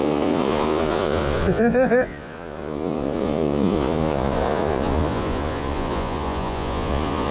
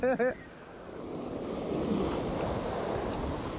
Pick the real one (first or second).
second